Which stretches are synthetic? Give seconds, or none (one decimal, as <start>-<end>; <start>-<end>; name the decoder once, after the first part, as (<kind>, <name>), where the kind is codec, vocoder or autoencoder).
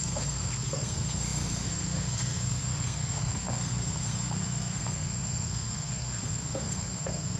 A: 0.0-7.4 (codec, SNAC)